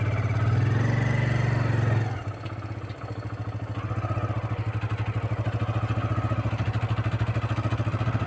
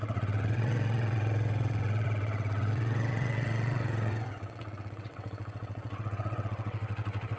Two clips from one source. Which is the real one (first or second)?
first